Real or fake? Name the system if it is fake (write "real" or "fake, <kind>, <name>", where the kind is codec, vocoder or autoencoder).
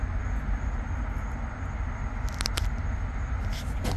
real